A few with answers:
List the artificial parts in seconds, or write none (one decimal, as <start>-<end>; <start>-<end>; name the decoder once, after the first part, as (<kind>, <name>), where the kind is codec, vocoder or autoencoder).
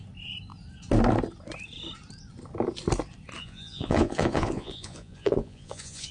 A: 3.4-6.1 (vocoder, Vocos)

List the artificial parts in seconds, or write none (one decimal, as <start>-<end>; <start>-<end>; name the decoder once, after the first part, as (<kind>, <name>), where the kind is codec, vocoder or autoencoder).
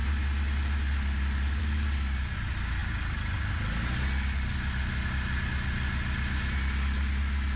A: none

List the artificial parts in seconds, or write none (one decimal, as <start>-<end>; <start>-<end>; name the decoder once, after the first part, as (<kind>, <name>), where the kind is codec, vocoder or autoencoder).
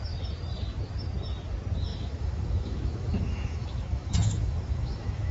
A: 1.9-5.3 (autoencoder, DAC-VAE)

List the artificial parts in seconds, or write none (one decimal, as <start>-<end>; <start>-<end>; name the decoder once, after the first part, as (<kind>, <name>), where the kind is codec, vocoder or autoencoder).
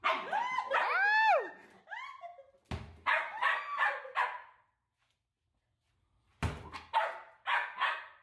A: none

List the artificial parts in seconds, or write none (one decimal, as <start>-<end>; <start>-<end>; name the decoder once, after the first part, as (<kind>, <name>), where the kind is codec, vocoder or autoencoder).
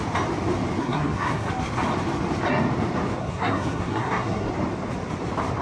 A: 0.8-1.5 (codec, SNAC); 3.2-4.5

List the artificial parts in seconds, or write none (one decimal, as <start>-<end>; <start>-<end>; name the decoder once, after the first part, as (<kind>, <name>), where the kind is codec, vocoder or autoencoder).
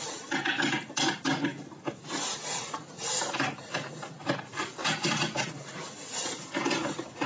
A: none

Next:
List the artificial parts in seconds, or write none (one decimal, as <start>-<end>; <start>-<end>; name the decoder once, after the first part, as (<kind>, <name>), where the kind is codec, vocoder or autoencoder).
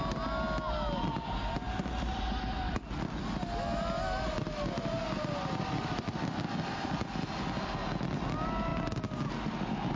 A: none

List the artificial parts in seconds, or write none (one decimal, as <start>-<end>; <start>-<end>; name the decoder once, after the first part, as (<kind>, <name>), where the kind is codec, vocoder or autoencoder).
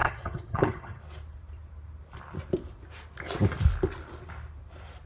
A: 0.0-1.0 (vocoder, HiFi-GAN)